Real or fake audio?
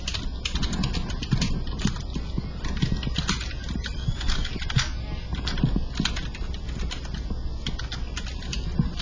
real